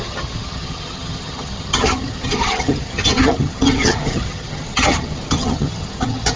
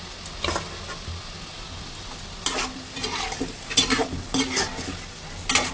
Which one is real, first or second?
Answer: second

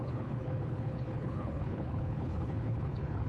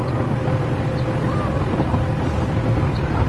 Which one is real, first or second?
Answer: second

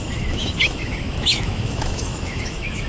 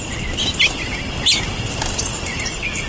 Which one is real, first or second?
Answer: second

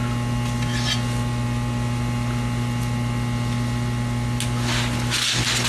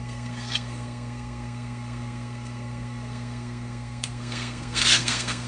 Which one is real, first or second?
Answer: first